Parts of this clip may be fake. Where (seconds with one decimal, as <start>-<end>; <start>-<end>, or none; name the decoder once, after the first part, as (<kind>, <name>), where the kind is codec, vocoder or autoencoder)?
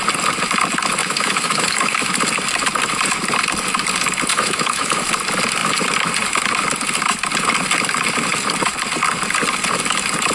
1.0-2.1 (autoencoder, DAC-VAE); 4.3-5.1